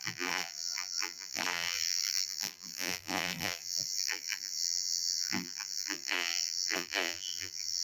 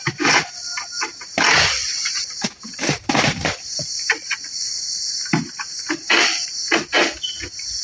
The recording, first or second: second